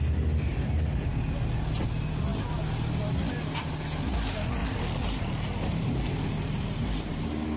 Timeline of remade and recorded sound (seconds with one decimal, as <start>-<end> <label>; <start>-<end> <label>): 0.0-4.6 recorded; 4.6-7.1 remade; 7.1-7.6 recorded